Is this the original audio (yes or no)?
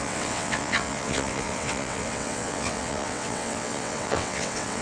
no